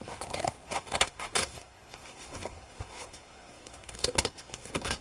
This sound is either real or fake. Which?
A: fake